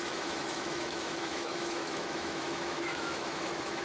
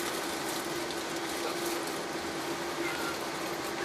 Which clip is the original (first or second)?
second